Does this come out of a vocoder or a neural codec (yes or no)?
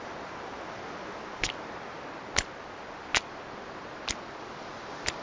no